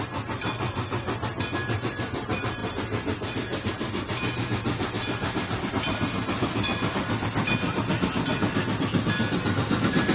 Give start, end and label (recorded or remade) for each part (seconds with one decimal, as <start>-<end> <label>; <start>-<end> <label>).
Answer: 0.0-10.1 recorded